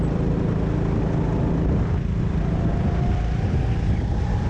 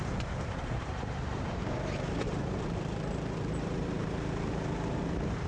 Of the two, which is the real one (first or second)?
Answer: first